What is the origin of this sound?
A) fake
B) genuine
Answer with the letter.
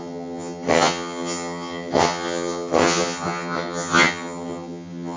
A